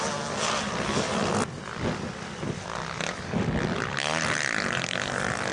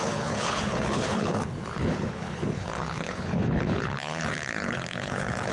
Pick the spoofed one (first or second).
second